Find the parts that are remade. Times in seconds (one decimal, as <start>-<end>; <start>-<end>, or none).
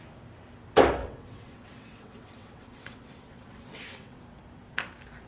1.0-4.2